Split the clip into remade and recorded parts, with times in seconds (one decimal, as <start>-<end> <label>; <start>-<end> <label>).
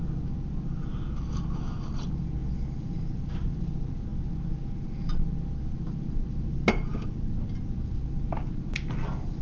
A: 0.0-9.4 recorded